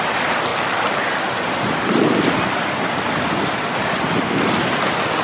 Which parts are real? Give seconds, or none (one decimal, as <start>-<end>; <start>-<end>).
0.0-5.2